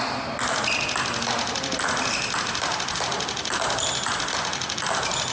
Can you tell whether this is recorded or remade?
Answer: recorded